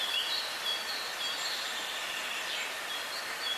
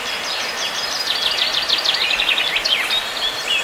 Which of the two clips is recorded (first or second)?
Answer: first